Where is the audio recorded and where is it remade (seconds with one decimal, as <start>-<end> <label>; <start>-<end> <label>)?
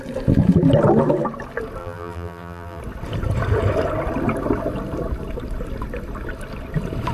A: 0.0-1.8 recorded; 1.8-2.8 remade; 2.8-7.1 recorded